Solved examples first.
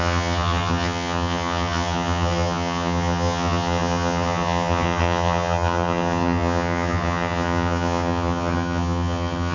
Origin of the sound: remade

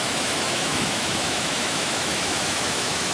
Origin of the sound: remade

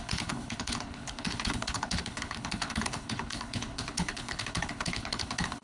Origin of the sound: remade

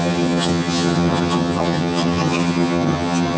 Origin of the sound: remade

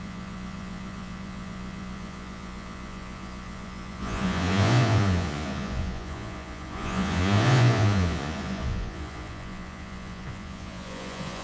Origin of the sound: remade